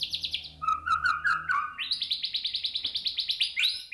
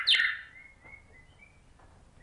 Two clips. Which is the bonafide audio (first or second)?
second